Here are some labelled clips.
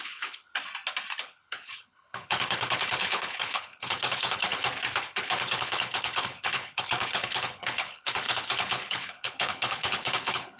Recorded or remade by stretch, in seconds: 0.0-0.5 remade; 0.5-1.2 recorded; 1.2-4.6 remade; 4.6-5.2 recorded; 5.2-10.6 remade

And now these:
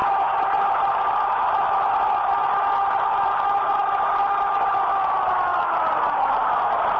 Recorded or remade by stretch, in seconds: 0.0-7.0 recorded

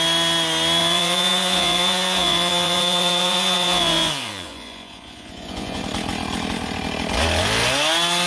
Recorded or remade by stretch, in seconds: 0.0-0.8 recorded; 0.8-5.8 remade; 5.8-8.3 recorded

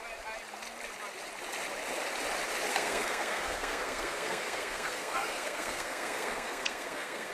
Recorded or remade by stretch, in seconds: 0.0-2.7 recorded; 2.7-7.3 remade

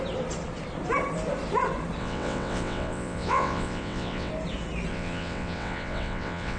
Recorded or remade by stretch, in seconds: 0.0-2.0 recorded; 2.0-4.3 remade; 4.3-4.9 recorded; 4.9-6.6 remade

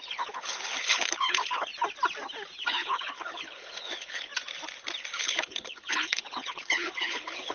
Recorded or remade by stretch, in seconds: 0.0-1.7 remade; 1.7-2.7 recorded; 2.7-4.3 remade; 4.3-5.2 recorded; 5.2-7.5 remade